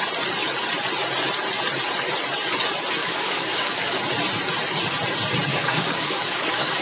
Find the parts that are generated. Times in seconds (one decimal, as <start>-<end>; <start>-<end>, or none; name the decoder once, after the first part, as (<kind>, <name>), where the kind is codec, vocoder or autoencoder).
3.0-4.0 (codec, DAC); 5.5-6.8